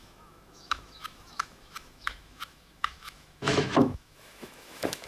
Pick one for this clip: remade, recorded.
remade